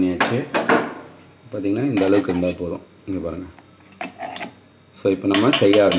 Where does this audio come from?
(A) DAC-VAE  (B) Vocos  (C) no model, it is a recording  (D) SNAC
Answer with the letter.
C